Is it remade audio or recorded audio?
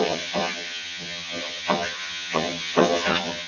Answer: remade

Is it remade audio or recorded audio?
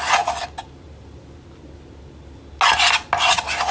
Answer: recorded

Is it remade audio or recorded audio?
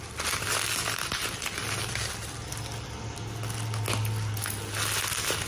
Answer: recorded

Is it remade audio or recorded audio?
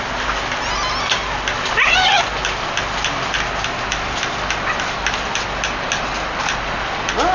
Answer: recorded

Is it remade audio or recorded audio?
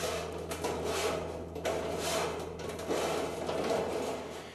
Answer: recorded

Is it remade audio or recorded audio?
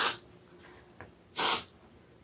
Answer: recorded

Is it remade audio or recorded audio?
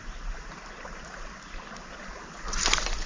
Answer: remade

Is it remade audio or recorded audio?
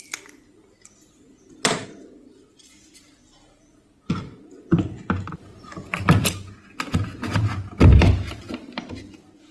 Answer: recorded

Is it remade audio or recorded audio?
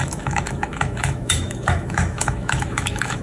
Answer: remade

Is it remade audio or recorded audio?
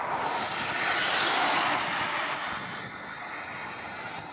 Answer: recorded